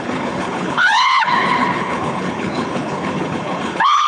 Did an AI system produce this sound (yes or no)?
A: yes